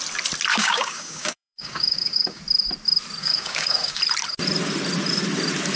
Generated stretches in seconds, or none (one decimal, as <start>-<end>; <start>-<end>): 0.5-2.4; 3.2-4.0